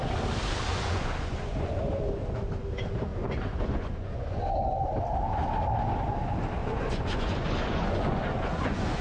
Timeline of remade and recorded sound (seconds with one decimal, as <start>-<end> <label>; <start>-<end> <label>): 0.0-0.7 recorded; 0.7-1.8 remade; 1.8-3.1 recorded; 3.1-4.4 remade; 4.4-6.6 recorded; 6.6-9.0 remade